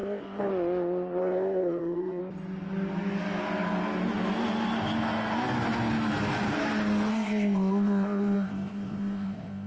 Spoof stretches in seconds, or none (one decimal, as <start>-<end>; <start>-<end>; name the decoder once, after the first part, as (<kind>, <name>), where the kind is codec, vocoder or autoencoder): 0.0-0.5 (codec, ZipCodec); 1.2-2.2; 7.1-9.7